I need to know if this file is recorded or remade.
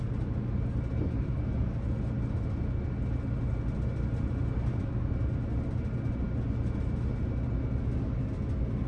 recorded